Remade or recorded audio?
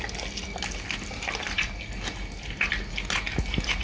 recorded